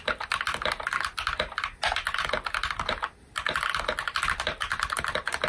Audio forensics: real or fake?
real